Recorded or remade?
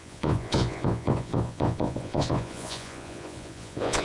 remade